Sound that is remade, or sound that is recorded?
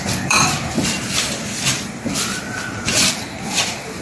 remade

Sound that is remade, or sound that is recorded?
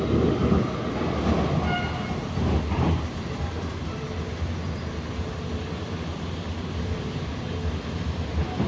recorded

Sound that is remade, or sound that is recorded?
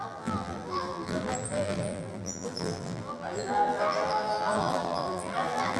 remade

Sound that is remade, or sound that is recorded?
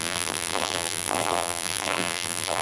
remade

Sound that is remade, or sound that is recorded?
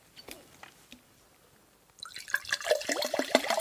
remade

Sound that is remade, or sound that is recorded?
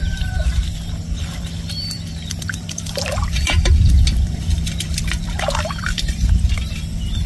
remade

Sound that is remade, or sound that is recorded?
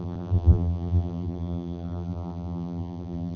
remade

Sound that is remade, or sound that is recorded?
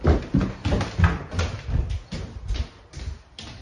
recorded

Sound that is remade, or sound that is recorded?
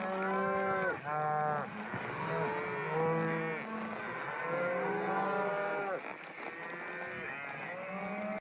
recorded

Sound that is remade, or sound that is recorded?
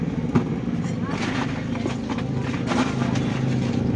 recorded